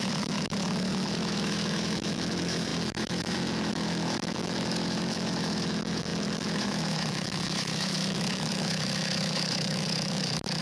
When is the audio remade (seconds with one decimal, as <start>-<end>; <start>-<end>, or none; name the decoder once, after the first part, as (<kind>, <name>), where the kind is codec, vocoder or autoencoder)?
0.0-10.6 (autoencoder, DAC-VAE)